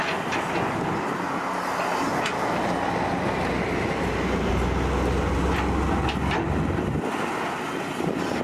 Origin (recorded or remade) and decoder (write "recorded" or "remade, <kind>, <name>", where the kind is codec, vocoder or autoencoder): recorded